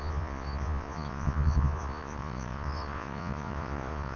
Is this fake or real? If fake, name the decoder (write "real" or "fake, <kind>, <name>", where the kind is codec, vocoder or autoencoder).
fake, vocoder, Vocos